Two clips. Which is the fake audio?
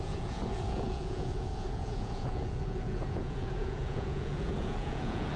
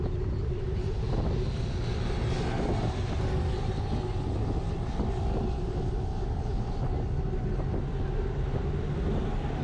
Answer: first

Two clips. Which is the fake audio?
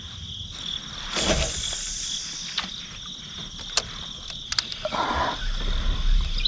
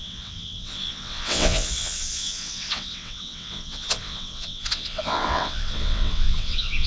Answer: second